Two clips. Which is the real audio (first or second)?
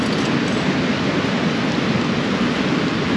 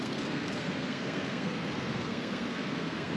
first